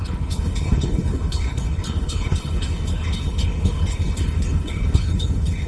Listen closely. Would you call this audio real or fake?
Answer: fake